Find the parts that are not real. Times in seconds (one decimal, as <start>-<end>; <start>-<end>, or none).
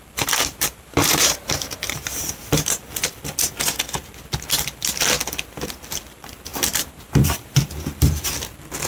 0.5-2.8; 6.5-7.6